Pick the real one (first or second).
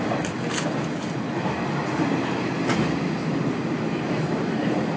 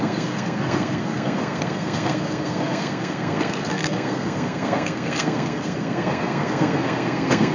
first